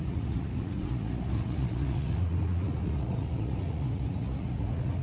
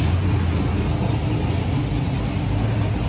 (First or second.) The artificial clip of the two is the first